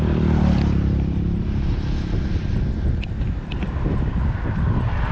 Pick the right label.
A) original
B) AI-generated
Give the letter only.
B